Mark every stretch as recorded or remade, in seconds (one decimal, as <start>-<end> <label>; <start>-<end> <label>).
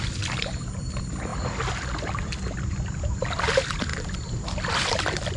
0.0-3.9 remade; 3.9-4.7 recorded; 4.7-5.4 remade